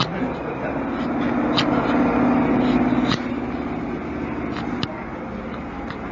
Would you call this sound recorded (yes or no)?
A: yes